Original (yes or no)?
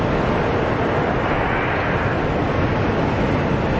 yes